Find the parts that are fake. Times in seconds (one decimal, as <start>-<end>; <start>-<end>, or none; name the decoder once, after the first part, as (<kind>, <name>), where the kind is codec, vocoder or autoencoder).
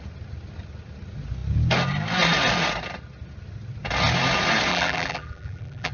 4.7-5.9 (vocoder, BigVGAN v2)